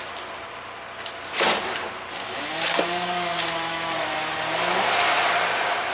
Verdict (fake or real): real